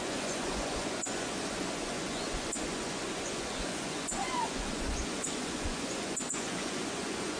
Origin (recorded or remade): remade